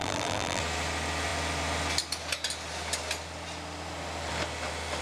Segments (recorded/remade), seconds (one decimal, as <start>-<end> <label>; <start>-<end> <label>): 0.0-0.6 remade; 0.6-5.0 recorded

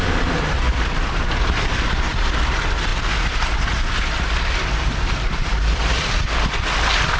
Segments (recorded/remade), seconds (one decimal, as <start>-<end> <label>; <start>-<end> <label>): 0.0-2.9 remade; 2.9-4.3 recorded; 4.3-7.2 remade